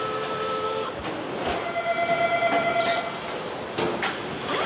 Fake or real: real